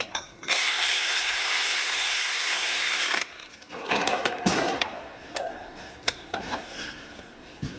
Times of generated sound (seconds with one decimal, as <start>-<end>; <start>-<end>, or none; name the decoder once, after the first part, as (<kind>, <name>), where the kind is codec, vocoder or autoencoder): 0.0-7.8 (codec, SNAC)